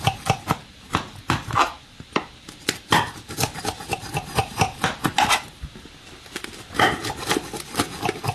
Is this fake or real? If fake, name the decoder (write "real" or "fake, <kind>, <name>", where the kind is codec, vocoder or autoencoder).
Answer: real